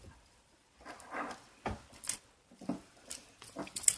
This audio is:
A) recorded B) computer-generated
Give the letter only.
A